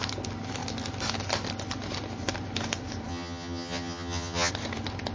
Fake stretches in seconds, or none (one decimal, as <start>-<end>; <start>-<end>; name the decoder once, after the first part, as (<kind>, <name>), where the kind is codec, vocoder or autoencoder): 3.1-4.5 (vocoder, HiFi-GAN)